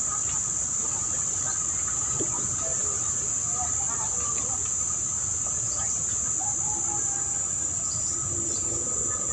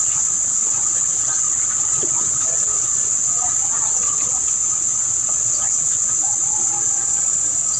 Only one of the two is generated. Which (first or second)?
second